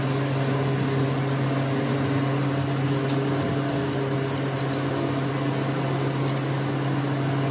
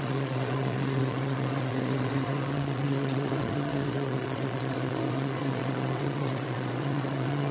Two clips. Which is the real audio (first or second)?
first